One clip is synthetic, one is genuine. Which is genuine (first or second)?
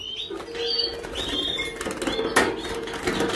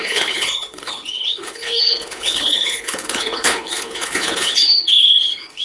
first